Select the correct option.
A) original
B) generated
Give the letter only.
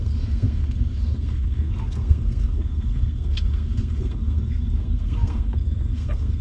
B